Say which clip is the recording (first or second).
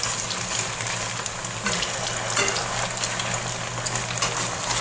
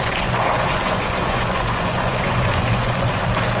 first